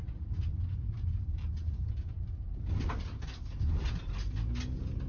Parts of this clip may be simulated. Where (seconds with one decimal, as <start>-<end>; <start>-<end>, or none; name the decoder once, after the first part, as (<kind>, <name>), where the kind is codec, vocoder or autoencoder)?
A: 0.7-2.3 (vocoder, BigVGAN v2)